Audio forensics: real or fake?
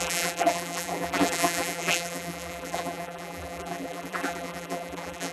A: fake